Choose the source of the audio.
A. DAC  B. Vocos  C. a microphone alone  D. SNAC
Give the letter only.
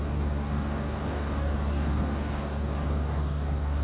A